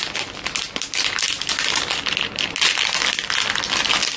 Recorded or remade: recorded